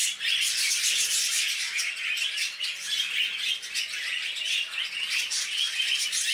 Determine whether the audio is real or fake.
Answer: real